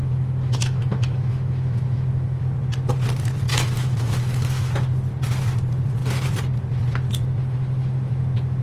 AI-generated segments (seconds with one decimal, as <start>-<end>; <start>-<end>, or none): 0.0-2.4; 3.5-4.7